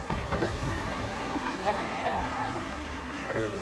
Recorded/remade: remade